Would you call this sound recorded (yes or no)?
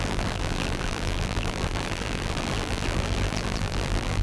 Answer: no